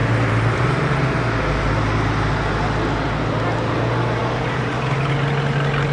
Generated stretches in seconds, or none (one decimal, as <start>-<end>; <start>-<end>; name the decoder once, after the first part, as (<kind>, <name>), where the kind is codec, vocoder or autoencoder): 0.0-0.9 (vocoder, BigVGAN v2); 4.2-4.7